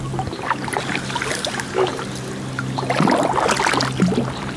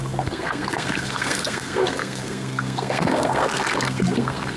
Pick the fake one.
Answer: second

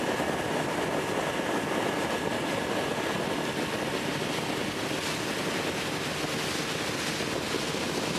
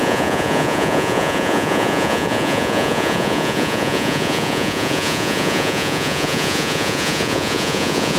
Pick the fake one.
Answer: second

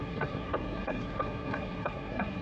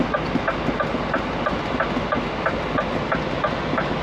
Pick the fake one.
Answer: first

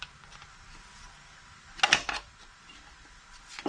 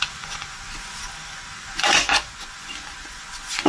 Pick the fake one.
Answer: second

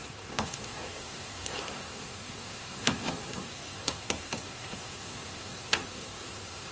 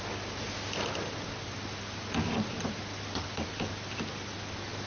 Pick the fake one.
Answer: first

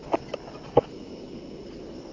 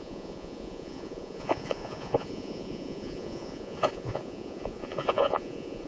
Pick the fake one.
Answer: second